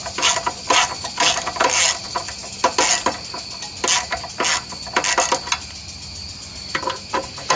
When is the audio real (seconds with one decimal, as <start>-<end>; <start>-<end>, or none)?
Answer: 0.0-7.6